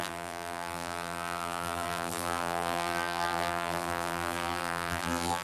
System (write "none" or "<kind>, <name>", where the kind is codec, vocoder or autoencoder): vocoder, BigVGAN v2